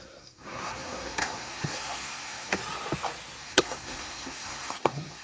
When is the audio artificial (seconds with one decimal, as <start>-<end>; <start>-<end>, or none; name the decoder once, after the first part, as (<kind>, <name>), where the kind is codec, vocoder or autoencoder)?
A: 0.0-2.6 (codec, SNAC); 3.4-5.2